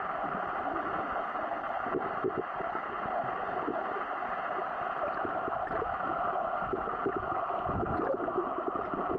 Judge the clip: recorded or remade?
recorded